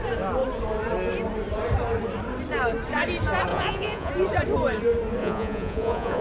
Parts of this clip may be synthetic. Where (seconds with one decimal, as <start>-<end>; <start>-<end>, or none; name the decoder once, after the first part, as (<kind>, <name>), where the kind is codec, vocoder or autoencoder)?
3.5-4.1 (vocoder, Vocos); 5.2-6.2